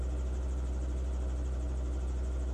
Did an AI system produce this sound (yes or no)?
no